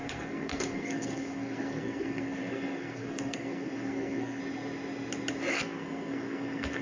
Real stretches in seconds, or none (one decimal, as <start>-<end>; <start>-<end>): 4.4-5.5